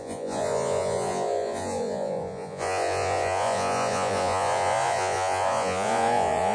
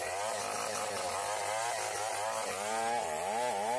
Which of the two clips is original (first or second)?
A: second